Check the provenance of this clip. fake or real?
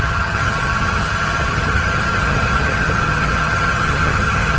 fake